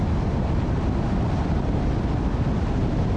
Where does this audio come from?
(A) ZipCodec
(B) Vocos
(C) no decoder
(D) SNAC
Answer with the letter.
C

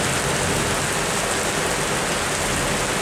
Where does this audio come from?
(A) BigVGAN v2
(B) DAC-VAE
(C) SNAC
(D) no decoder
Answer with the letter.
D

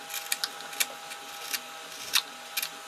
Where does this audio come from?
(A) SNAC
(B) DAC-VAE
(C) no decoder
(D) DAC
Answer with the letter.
C